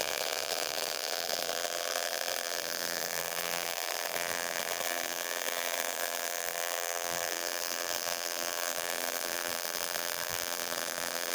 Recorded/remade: remade